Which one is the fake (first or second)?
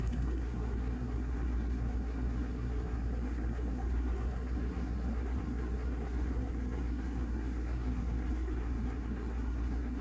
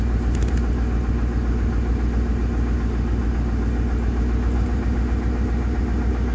first